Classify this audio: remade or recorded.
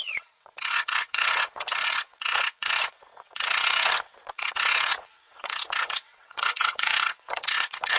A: remade